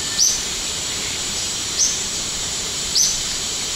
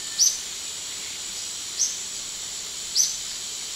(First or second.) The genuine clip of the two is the second